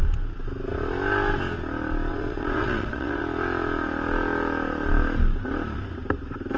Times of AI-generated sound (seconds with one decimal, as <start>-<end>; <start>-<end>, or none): 2.1-3.2